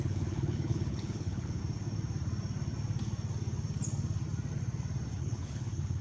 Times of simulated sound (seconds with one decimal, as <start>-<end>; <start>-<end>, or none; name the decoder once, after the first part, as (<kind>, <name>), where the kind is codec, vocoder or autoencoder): 0.0-1.6 (codec, HILCodec); 5.2-6.0